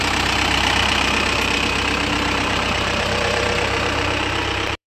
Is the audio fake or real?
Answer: fake